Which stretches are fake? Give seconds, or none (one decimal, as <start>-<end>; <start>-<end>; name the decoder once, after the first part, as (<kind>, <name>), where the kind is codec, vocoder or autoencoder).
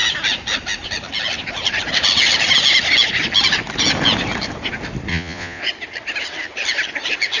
5.1-5.6 (vocoder, Vocos)